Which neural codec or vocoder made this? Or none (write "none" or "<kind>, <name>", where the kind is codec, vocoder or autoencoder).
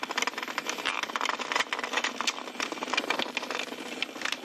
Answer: none